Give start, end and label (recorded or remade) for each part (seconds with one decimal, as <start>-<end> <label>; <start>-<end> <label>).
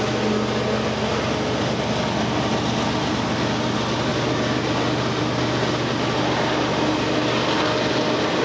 0.0-8.4 recorded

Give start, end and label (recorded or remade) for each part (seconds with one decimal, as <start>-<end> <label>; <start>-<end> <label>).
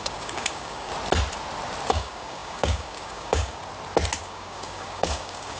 0.0-0.9 remade; 0.9-1.9 recorded; 1.9-3.6 remade; 3.6-4.2 recorded; 4.2-5.6 remade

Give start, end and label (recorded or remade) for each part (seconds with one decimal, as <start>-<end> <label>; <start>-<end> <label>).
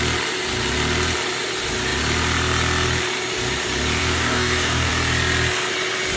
0.0-4.0 recorded; 4.0-4.9 remade; 4.9-6.2 recorded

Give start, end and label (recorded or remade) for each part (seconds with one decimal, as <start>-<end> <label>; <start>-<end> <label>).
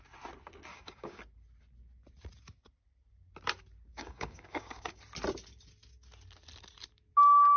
0.0-0.7 recorded; 0.7-1.2 remade; 1.2-3.9 recorded; 3.9-5.0 remade; 5.0-7.6 recorded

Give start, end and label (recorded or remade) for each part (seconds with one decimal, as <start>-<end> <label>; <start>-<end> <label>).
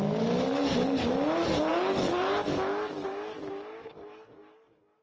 0.0-0.5 recorded; 0.5-1.1 remade; 1.1-1.7 recorded; 1.7-5.0 remade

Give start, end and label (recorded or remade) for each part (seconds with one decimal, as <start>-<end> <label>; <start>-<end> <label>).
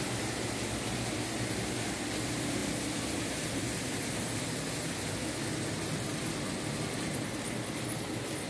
0.0-8.5 recorded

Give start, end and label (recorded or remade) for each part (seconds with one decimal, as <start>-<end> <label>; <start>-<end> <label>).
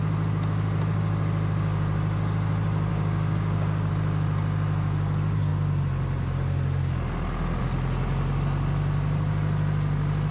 0.0-2.9 recorded; 2.9-3.9 remade; 3.9-10.3 recorded